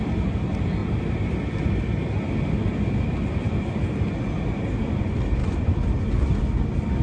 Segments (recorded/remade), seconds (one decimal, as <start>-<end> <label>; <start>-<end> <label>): 0.0-5.4 recorded; 5.4-6.4 remade; 6.4-7.0 recorded